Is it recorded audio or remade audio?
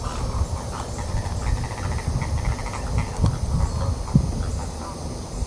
recorded